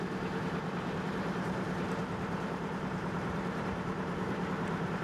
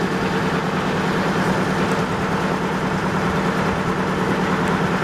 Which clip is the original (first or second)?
second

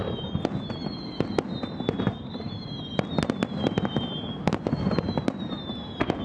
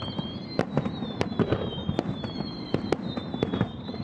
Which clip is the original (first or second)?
first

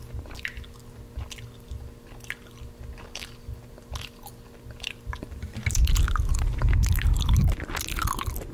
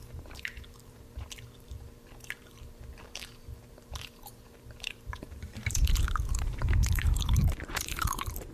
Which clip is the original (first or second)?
first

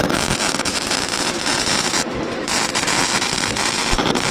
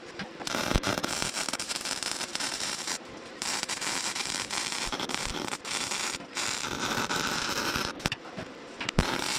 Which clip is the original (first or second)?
first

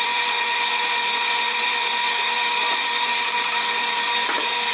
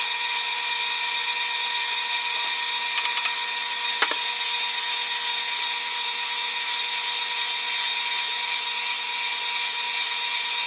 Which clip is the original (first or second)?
second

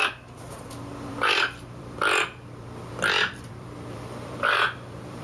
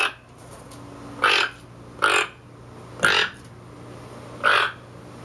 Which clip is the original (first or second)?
second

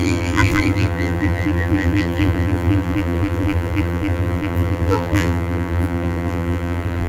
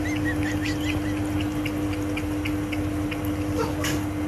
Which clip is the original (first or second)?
second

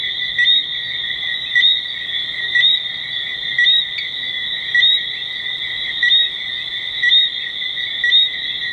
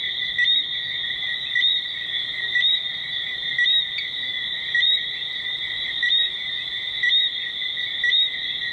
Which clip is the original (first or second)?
first